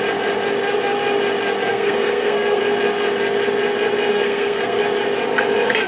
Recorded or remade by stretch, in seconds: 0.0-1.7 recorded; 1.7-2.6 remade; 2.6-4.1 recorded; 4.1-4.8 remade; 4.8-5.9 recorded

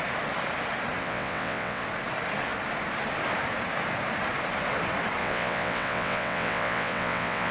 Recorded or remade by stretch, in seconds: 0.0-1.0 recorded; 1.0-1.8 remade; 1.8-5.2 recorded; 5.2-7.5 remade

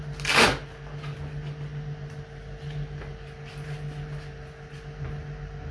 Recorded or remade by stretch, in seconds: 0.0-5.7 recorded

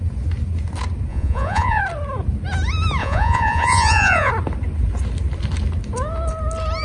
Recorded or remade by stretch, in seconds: 0.0-1.1 recorded; 1.1-1.8 remade; 1.8-3.0 recorded; 3.0-4.3 remade; 4.3-6.8 recorded